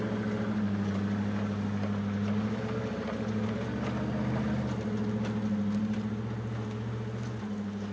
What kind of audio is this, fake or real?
real